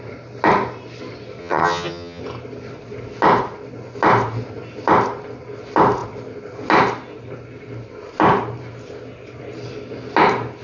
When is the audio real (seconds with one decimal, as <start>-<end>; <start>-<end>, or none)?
0.0-1.4; 2.2-10.6